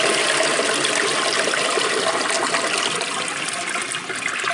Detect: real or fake real